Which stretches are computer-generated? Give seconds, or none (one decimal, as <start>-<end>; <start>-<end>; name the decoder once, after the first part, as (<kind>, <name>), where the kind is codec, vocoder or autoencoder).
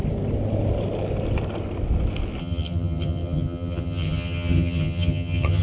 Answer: 2.4-5.6 (vocoder, HiFi-GAN)